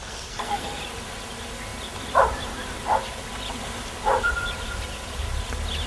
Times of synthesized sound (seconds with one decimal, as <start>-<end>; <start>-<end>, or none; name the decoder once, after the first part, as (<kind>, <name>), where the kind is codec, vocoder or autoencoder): 0.0-0.8 (codec, SNAC)